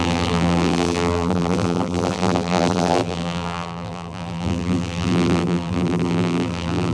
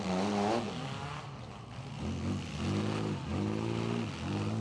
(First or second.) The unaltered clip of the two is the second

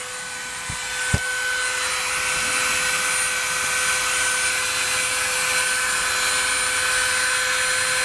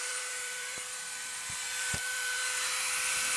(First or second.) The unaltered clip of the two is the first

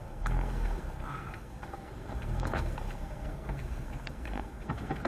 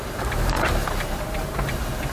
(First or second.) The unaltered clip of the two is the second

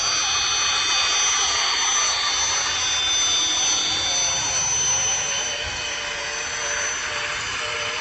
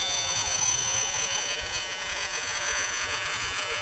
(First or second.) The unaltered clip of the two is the first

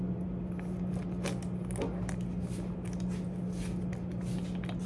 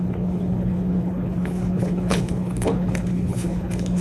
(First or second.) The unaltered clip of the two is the first